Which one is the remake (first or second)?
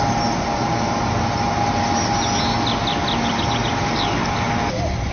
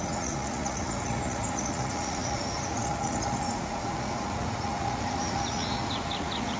second